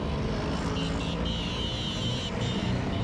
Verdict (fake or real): real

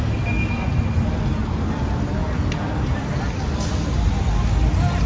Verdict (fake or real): real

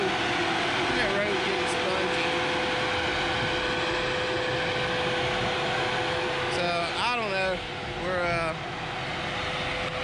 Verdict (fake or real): real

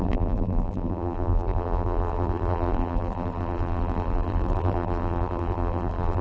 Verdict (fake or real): fake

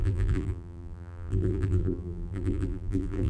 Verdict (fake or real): fake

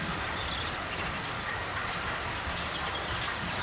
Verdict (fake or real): real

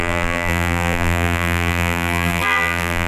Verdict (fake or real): fake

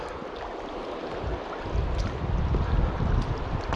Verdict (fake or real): real